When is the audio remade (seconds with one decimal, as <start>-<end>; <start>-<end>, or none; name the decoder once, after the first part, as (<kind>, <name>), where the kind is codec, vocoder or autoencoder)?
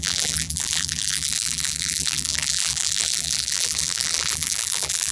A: 0.0-5.1 (vocoder, BigVGAN v2)